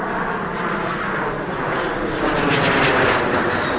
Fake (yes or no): no